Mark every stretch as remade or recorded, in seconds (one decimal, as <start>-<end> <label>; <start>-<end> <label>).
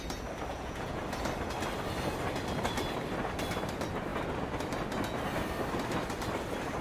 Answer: 0.0-0.5 recorded; 0.5-1.0 remade; 1.0-6.8 recorded